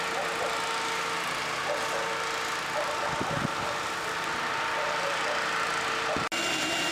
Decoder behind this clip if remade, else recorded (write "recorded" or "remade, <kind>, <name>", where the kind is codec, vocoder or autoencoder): recorded